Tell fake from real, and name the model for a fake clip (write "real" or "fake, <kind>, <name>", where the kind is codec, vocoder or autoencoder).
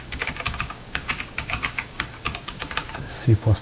fake, codec, DAC